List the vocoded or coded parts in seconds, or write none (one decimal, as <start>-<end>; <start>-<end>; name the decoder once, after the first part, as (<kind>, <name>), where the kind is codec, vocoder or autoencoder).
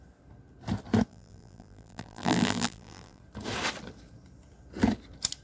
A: 1.1-3.2 (vocoder, BigVGAN v2)